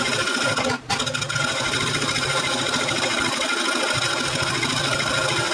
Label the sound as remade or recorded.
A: recorded